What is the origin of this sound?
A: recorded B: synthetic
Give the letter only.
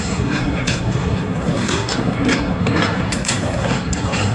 B